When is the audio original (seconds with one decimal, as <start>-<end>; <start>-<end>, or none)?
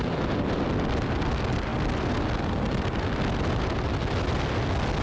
0.0-5.0